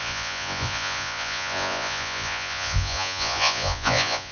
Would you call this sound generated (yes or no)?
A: yes